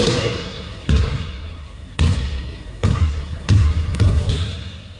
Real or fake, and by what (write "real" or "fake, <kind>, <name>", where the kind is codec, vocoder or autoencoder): fake, codec, SNAC